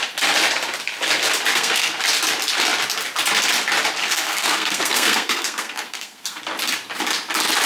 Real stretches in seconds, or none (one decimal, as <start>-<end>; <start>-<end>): 0.0-1.5; 2.0-4.0; 6.4-7.7